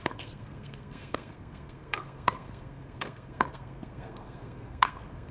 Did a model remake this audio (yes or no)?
yes